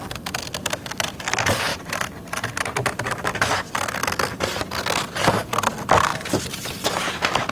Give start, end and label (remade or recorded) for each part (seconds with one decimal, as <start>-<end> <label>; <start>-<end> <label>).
0.0-1.7 recorded; 1.7-3.3 remade; 3.3-6.1 recorded; 6.1-6.9 remade; 6.9-7.5 recorded